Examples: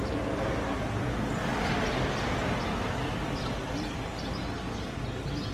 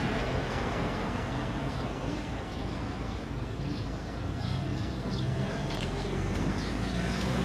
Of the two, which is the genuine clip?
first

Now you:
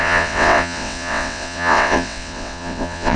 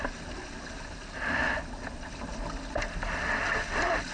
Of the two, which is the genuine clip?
second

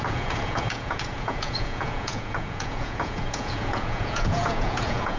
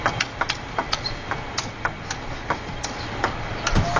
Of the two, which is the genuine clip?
second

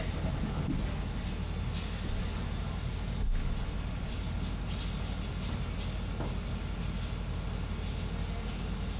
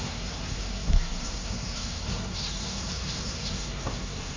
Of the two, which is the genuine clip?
first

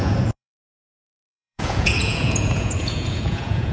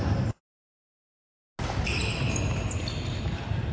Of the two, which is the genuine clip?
second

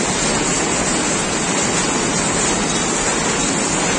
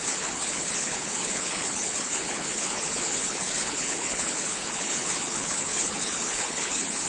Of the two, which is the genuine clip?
first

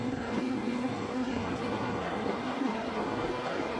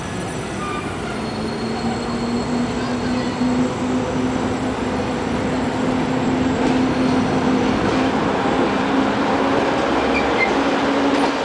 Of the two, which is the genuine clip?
second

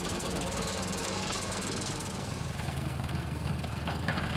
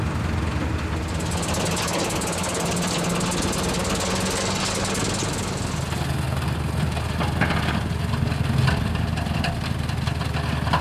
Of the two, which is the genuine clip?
second